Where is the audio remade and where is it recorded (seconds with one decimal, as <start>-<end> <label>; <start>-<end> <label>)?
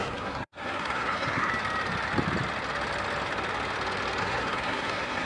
0.0-1.5 remade; 1.5-4.2 recorded; 4.2-5.3 remade